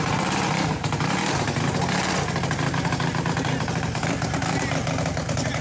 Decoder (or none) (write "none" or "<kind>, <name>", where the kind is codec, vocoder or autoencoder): none